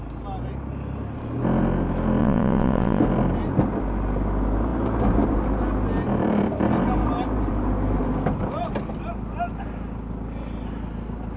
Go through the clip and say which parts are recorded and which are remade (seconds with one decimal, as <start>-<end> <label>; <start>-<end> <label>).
0.0-2.2 recorded; 2.2-3.0 remade; 3.0-11.4 recorded